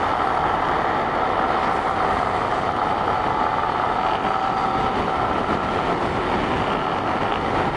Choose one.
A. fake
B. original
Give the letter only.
B